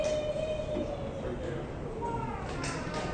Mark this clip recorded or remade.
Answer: recorded